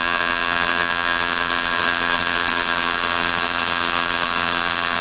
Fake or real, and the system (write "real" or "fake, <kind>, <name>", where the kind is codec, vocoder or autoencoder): fake, vocoder, BigVGAN v2